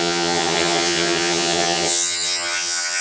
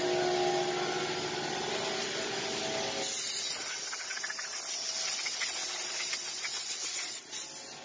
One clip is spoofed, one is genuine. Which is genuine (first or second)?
second